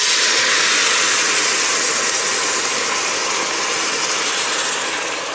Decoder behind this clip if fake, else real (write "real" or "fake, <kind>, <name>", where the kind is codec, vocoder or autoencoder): real